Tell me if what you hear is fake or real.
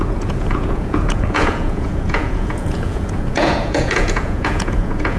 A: fake